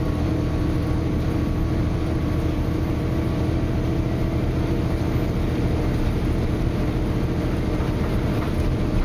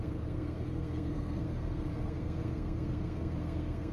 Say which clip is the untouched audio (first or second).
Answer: first